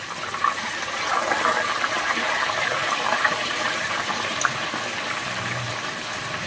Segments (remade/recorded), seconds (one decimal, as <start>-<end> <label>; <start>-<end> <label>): 0.0-1.2 remade; 1.2-1.8 recorded; 1.8-6.5 remade